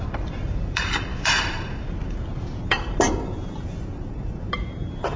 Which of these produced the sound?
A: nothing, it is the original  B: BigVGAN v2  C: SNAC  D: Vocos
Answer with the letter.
B